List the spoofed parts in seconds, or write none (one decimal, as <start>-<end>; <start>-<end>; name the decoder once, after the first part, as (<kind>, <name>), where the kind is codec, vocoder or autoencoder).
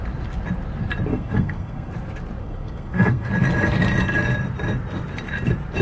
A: 1.1-1.9 (codec, SNAC); 2.4-3.3